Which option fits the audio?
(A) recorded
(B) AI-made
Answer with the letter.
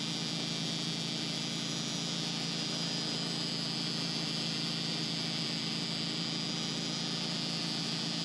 A